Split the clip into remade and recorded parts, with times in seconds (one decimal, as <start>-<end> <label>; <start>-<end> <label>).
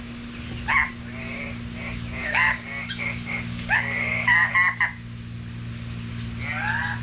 0.0-2.2 recorded; 2.2-4.5 remade; 4.5-7.0 recorded